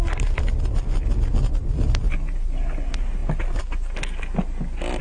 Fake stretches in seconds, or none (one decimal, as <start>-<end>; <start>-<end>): none